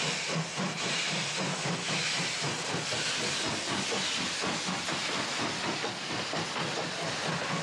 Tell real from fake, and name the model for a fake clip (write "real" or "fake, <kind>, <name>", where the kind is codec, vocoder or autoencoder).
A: real